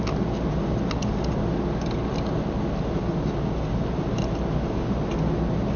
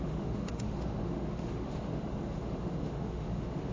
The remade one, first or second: second